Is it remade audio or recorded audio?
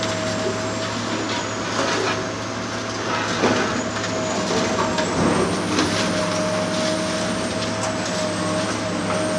recorded